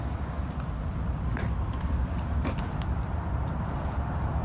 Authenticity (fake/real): fake